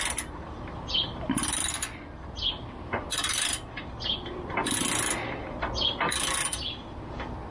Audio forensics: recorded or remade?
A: recorded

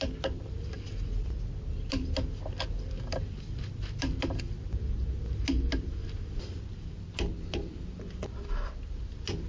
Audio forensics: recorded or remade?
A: recorded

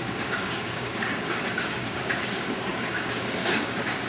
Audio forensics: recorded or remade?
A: remade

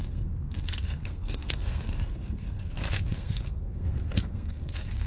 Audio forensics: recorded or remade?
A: remade